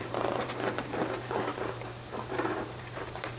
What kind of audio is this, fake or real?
fake